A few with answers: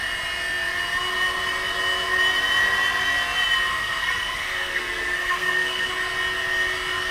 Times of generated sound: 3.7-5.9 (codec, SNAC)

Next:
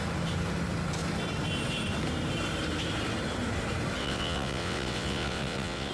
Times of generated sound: 4.0-5.9 (vocoder, WaveNeXt)

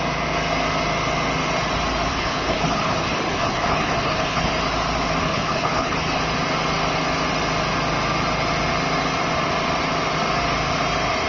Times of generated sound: 2.1-4.5 (codec, HILCodec); 5.2-6.2

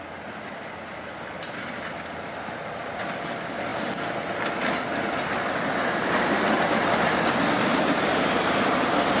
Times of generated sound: none

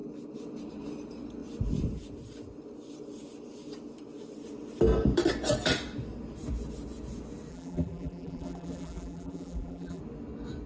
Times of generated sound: 7.5-10.0 (vocoder, BigVGAN v2)

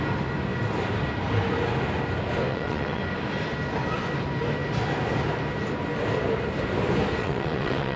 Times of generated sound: 2.5-3.0 (vocoder, WaveNeXt); 7.2-8.0

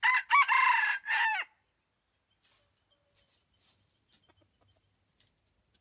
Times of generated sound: none

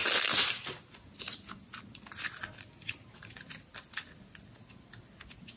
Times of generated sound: none